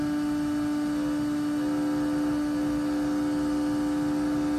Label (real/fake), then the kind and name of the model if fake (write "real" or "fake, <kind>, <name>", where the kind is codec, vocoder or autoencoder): real